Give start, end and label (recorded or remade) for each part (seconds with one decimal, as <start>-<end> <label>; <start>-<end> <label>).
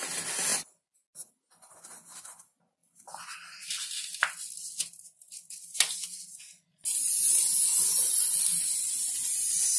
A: 0.0-9.8 recorded